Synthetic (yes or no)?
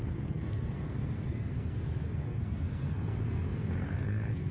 yes